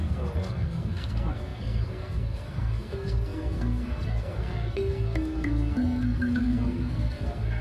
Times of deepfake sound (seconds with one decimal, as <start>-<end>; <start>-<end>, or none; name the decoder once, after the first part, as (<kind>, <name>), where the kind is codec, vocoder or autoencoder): 0.0-7.6 (codec, SNAC)